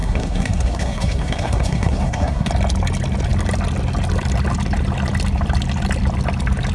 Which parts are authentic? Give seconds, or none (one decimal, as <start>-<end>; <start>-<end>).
2.5-6.7